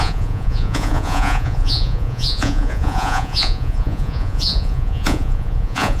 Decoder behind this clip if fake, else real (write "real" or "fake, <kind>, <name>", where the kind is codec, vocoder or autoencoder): fake, vocoder, Vocos